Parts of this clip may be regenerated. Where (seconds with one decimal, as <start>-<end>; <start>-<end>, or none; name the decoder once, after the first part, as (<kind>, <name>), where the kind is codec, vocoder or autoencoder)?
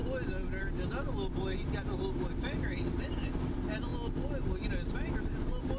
none